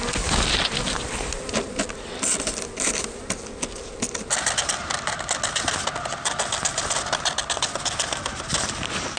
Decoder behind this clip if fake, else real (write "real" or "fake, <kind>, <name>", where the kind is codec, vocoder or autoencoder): real